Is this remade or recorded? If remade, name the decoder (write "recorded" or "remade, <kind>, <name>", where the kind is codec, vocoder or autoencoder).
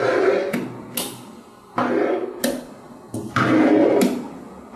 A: recorded